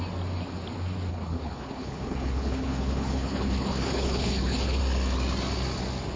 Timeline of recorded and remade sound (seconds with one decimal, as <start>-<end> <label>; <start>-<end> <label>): 0.0-1.1 recorded; 1.1-4.8 remade; 4.8-6.2 recorded